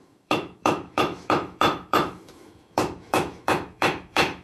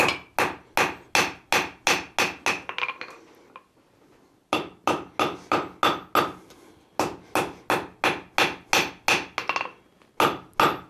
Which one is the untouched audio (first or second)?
second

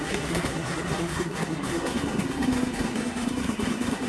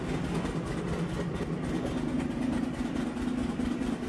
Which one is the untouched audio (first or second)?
second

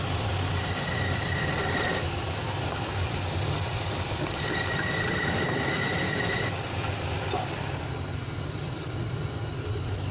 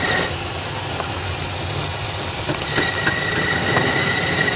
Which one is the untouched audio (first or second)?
second